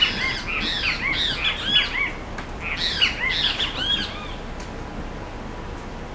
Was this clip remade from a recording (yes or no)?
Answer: no